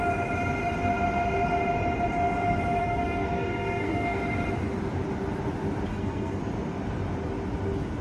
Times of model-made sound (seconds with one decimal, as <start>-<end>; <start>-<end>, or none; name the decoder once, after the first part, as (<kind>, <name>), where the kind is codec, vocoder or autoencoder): 2.8-4.2 (codec, SNAC); 5.9-6.4